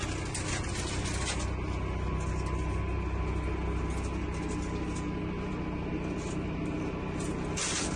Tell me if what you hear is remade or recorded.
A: recorded